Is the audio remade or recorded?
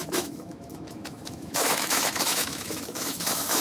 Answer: remade